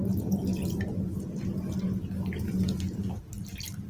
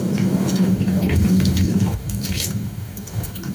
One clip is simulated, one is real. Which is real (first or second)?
first